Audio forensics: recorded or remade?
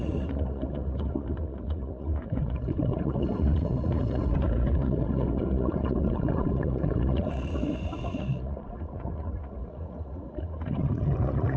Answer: remade